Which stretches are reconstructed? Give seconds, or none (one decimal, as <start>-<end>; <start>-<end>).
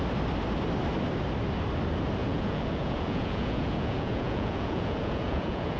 2.2-5.8